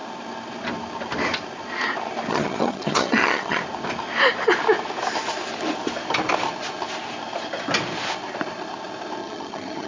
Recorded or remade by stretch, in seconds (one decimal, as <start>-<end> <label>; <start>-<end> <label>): 0.0-2.3 recorded; 2.3-3.6 remade; 3.6-9.2 recorded; 9.2-9.9 remade